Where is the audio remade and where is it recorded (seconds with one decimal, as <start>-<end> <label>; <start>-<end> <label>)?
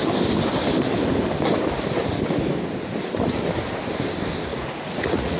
0.0-4.5 recorded; 4.5-5.4 remade